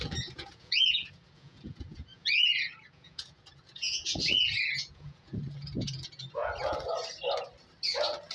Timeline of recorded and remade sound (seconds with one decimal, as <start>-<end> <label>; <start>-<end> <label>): 0.0-6.4 remade; 6.4-8.3 recorded